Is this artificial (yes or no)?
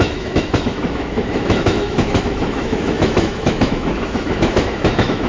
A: yes